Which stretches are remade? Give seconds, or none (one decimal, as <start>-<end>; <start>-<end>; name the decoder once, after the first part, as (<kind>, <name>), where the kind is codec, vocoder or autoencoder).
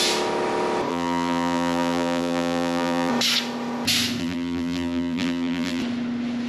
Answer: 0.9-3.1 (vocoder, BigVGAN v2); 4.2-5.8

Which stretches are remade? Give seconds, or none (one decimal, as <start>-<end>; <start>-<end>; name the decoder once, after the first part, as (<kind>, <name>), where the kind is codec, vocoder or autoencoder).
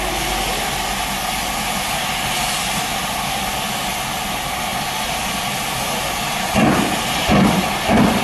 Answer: none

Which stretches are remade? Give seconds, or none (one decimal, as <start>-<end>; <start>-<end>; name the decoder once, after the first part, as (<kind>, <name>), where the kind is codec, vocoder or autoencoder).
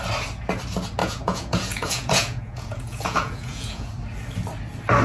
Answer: 1.0-3.9 (vocoder, Vocos)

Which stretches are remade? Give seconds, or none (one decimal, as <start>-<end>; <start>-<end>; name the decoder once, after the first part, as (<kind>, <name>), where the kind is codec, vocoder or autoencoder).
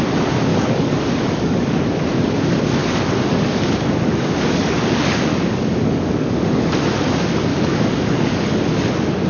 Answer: 0.5-1.8 (codec, DAC); 2.8-6.7; 7.5-8.6